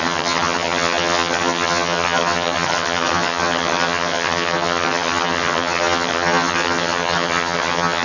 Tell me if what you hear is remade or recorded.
remade